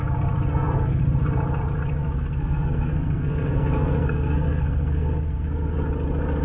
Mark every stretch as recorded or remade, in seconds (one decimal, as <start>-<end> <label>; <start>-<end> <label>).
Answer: 0.0-0.5 recorded; 0.5-1.0 remade; 1.0-2.0 recorded; 2.0-5.8 remade; 5.8-6.4 recorded